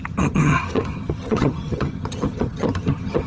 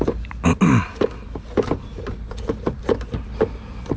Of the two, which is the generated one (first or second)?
first